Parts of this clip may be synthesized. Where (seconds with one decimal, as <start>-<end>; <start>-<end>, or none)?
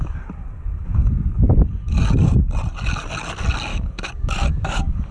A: 1.0-2.0; 3.7-5.1